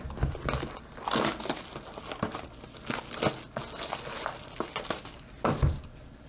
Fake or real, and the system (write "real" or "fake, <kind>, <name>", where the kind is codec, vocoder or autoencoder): real